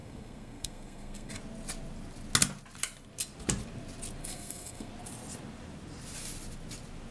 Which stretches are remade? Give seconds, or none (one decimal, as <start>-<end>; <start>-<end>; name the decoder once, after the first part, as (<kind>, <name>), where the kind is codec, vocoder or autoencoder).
0.0-1.3 (codec, SNAC); 4.2-4.9